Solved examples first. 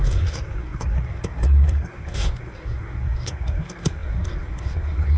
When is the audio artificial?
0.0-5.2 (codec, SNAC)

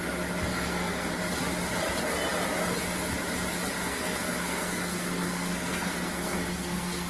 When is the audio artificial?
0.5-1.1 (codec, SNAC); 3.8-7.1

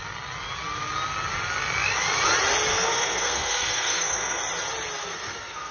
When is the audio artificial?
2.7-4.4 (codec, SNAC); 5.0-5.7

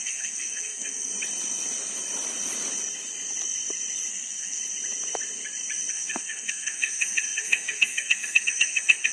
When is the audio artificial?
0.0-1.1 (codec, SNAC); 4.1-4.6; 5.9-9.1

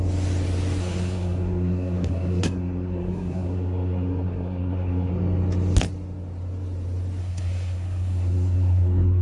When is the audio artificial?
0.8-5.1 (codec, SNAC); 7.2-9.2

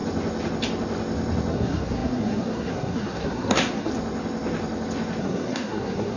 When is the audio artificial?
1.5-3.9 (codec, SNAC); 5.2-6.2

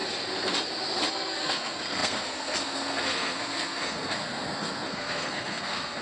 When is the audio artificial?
1.1-6.0 (codec, SNAC)